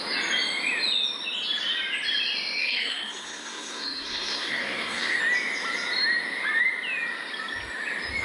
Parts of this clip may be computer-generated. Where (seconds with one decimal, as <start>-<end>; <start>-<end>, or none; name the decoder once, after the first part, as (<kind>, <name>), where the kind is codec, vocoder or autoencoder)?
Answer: 2.6-5.2 (codec, SNAC)